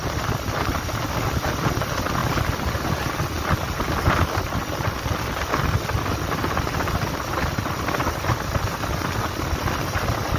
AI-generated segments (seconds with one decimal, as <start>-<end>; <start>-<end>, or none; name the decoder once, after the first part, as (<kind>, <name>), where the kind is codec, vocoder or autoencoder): none